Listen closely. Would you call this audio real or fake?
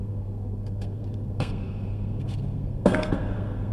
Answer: fake